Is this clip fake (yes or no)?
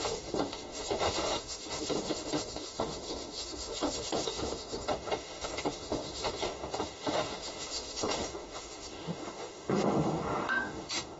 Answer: yes